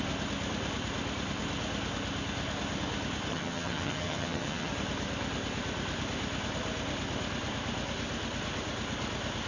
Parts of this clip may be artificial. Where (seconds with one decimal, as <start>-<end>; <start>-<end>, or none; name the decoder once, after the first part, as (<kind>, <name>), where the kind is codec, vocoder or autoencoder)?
3.3-4.7 (vocoder, HiFi-GAN)